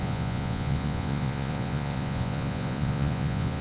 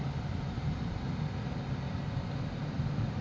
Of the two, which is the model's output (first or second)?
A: first